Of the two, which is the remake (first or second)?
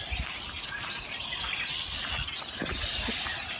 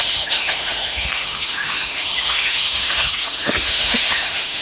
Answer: second